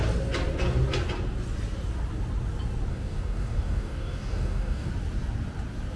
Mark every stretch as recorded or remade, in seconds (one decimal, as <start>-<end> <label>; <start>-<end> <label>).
0.0-2.9 recorded; 2.9-4.9 remade; 4.9-6.0 recorded